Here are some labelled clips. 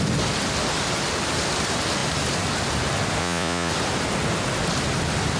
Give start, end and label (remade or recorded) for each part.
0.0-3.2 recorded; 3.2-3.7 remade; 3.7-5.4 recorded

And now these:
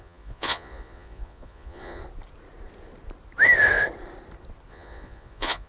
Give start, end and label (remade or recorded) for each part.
0.0-2.0 remade; 2.0-4.7 recorded; 4.7-5.7 remade

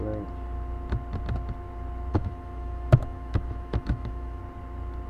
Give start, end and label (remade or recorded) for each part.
0.0-2.1 recorded; 2.1-4.4 remade; 4.4-5.1 recorded

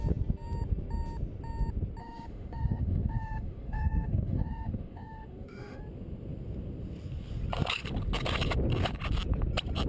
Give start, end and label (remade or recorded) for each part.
0.0-2.0 recorded; 2.0-5.8 remade; 5.8-9.9 recorded

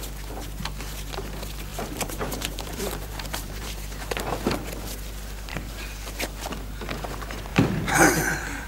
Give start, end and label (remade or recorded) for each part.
0.0-1.7 recorded; 1.7-4.1 remade; 4.1-7.5 recorded; 7.5-8.7 remade

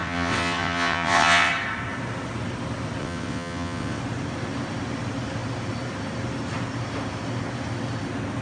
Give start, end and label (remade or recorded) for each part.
0.0-1.5 remade; 1.5-3.0 recorded; 3.0-4.0 remade; 4.0-8.4 recorded